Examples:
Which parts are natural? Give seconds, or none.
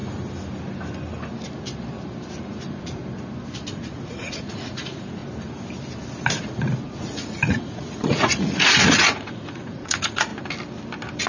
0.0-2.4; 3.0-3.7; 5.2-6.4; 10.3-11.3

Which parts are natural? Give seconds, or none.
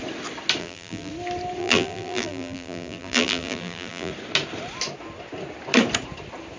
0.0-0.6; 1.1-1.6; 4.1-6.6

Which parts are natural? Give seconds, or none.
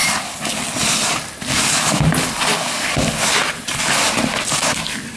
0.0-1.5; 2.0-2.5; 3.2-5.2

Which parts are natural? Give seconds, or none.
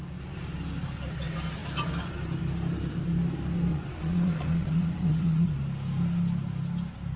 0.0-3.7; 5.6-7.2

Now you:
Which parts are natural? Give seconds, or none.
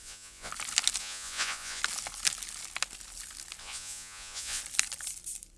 0.5-1.0; 1.8-3.6; 4.6-5.6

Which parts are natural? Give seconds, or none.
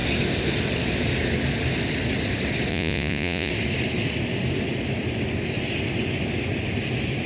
0.0-2.7; 3.5-7.3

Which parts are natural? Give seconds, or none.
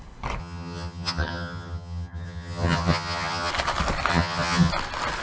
0.0-0.4; 3.5-4.1; 4.7-5.2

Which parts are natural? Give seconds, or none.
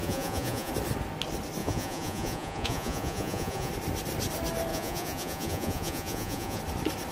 0.7-1.6; 3.7-4.7; 6.6-7.1